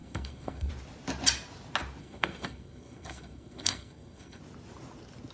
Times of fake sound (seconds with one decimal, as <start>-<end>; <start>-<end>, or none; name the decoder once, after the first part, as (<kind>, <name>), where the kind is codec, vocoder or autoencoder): 0.0-0.7 (codec, SNAC); 2.0-4.4